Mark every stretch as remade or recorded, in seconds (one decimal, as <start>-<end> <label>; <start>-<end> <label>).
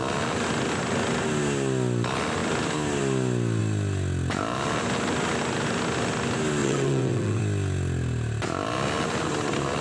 0.0-6.6 recorded; 6.6-7.4 remade; 7.4-9.8 recorded